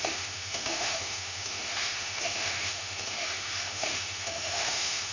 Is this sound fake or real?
fake